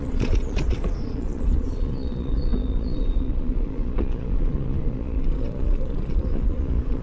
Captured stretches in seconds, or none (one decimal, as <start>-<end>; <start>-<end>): none